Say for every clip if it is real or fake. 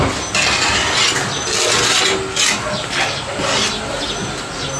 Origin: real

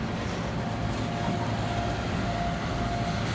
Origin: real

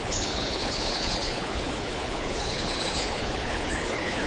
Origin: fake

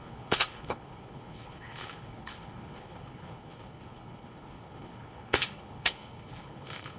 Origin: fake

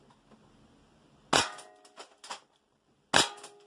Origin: real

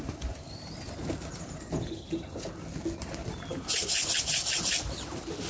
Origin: real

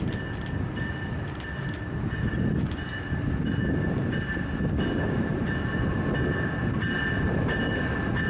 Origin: real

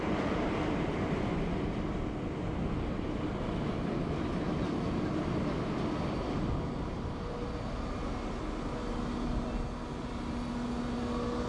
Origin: real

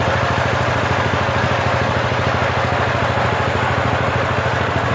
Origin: real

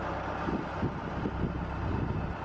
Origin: real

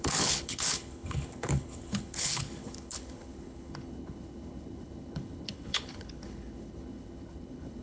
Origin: fake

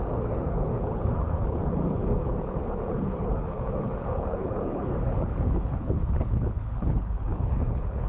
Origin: fake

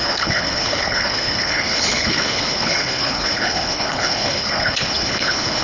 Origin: fake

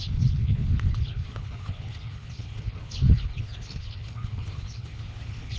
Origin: fake